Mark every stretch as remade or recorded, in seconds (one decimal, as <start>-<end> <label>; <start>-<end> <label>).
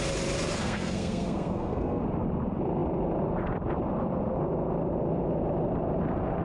0.0-0.6 recorded; 0.6-2.0 remade; 2.0-6.4 recorded